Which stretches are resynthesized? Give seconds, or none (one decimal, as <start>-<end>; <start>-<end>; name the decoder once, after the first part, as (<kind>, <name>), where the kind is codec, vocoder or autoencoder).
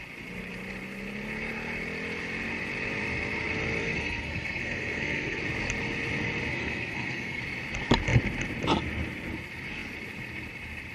3.8-5.4 (codec, SNAC); 6.5-7.4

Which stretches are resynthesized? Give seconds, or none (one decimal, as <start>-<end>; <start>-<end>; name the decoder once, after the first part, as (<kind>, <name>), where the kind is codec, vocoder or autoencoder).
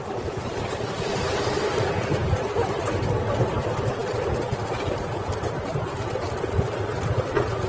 none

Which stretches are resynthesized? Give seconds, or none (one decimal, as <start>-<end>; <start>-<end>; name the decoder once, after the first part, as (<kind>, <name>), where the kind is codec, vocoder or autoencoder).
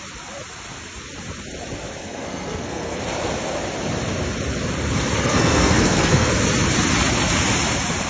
2.0-3.0 (codec, SNAC); 5.2-6.3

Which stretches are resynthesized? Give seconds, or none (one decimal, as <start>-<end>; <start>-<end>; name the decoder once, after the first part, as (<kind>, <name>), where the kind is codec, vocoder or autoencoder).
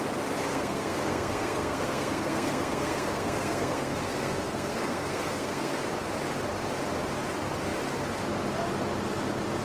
0.5-5.8 (codec, SNAC)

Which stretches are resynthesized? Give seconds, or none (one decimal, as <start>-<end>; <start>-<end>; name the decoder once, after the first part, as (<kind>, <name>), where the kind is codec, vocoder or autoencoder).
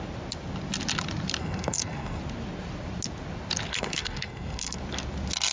1.4-2.2 (codec, SNAC); 3.7-4.8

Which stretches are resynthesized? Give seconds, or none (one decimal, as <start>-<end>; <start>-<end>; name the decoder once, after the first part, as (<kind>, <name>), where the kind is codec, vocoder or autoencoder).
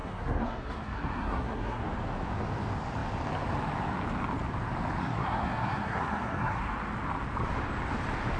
0.0-1.8 (codec, SNAC); 5.0-6.6